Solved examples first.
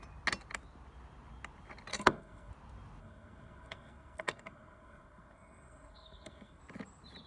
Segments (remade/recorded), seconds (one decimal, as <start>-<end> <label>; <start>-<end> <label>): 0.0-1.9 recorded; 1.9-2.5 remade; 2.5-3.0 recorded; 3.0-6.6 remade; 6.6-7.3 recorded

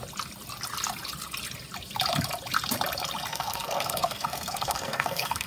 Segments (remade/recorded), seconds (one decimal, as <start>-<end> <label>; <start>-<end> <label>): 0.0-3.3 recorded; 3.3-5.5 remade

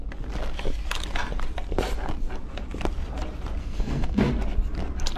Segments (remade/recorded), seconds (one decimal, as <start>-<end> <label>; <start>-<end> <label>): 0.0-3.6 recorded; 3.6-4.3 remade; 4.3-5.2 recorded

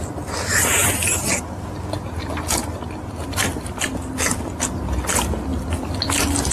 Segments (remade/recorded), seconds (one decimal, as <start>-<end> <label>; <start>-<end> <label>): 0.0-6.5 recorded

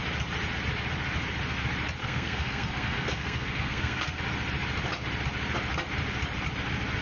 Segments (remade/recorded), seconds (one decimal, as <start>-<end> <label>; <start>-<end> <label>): 0.0-2.0 recorded; 2.0-4.2 remade; 4.2-7.0 recorded

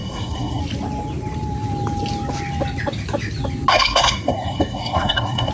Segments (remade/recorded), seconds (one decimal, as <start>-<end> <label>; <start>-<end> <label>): 0.0-0.6 remade; 0.6-3.7 recorded; 3.7-5.5 remade

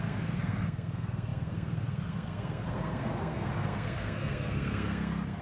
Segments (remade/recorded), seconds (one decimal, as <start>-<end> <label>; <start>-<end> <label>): 0.0-5.4 remade

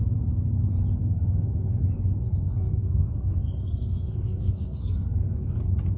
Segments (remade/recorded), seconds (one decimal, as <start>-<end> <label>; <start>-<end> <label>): 0.0-1.0 recorded; 1.0-1.8 remade; 1.8-2.2 recorded; 2.2-5.6 remade; 5.6-6.0 recorded